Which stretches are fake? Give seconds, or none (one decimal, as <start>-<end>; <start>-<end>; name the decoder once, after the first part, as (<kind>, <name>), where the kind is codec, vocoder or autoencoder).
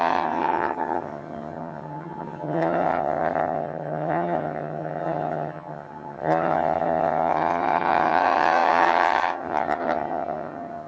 0.0-10.9 (vocoder, HiFi-GAN)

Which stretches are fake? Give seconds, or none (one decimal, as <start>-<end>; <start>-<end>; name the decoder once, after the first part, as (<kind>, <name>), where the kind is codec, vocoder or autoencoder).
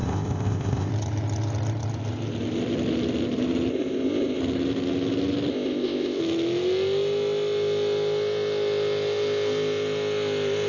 0.0-0.9 (codec, ZipCodec); 3.7-4.4; 5.5-6.2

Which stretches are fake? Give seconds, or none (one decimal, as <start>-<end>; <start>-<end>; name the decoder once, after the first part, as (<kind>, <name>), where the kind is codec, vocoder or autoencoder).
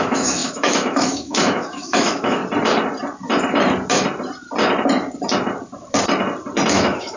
0.0-2.4 (autoencoder, DAC-VAE); 6.7-7.2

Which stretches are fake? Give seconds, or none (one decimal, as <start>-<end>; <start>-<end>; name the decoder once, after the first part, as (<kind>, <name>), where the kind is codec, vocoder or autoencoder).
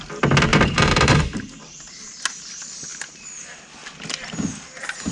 0.5-2.1 (vocoder, BigVGAN v2)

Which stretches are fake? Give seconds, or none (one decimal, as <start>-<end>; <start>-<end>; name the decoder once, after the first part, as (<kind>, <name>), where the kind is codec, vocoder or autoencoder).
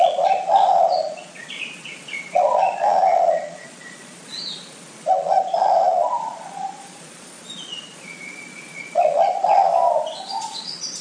0.0-9.7 (vocoder, Vocos); 10.4-11.0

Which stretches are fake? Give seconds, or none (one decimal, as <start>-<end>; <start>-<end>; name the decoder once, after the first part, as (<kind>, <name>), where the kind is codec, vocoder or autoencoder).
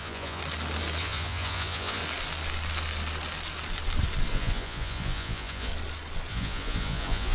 0.0-0.4 (vocoder, Vocos); 1.0-2.0; 4.3-5.7; 6.3-7.3